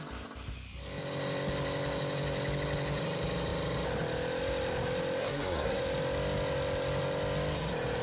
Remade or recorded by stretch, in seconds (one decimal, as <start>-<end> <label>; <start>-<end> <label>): 0.0-5.2 recorded; 5.2-5.8 remade; 5.8-8.0 recorded